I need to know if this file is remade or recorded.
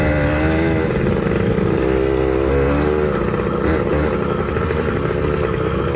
recorded